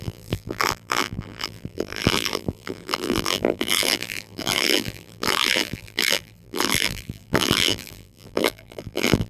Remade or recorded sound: remade